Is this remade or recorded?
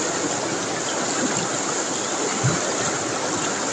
recorded